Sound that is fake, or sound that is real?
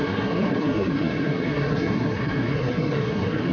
fake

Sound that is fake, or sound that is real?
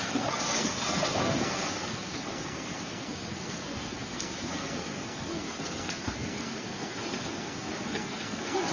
fake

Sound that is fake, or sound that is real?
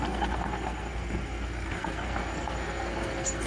fake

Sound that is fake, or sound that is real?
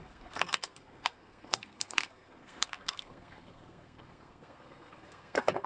fake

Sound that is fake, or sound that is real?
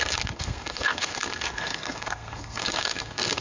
fake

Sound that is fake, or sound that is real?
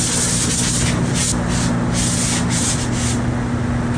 real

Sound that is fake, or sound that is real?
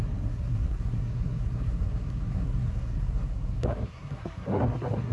fake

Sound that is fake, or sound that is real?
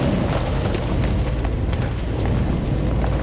real